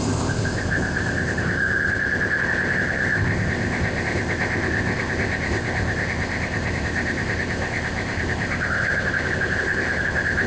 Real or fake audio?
fake